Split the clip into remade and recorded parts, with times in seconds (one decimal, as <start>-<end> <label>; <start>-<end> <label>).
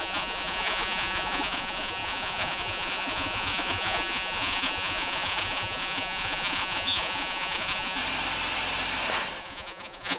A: 0.0-8.0 remade; 8.0-9.4 recorded; 9.4-10.2 remade